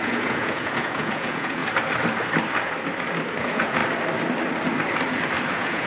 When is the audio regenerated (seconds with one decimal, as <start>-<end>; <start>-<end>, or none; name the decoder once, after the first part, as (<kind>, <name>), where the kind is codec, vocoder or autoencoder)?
0.0-1.6 (vocoder, Vocos); 3.4-3.8; 5.5-5.9